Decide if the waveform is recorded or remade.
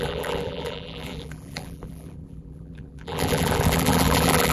remade